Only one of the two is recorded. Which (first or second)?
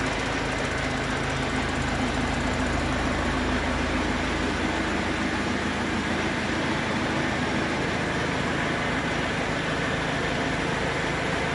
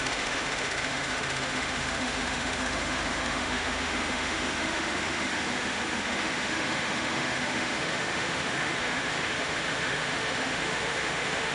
first